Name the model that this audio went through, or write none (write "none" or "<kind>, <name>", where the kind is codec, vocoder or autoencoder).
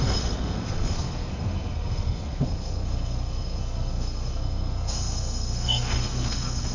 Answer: codec, SNAC